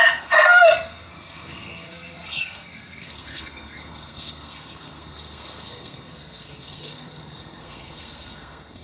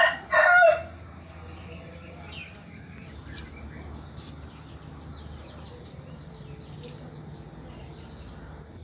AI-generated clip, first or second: first